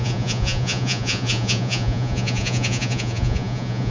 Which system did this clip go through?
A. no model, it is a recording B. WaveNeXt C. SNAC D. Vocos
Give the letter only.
D